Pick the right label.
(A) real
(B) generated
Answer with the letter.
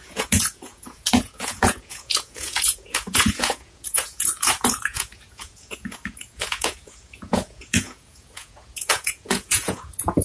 B